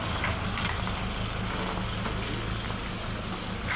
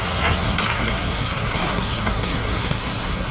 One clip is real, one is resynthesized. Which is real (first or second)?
first